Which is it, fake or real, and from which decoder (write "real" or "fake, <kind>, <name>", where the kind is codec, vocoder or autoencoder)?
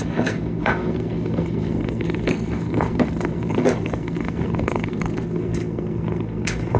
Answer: fake, codec, SNAC